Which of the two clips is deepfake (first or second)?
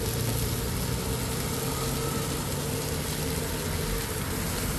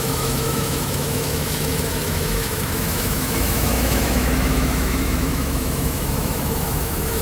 second